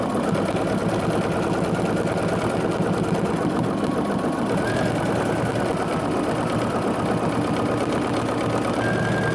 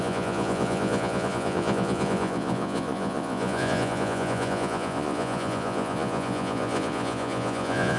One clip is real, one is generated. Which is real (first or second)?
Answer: first